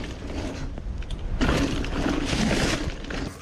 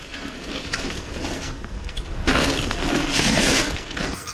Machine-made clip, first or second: second